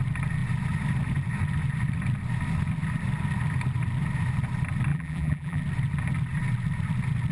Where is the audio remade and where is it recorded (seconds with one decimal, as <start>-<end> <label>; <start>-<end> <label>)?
0.0-4.9 recorded; 4.9-5.6 remade; 5.6-7.3 recorded